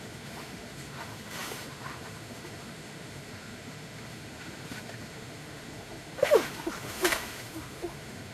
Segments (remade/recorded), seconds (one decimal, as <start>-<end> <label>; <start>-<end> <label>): 0.0-8.3 remade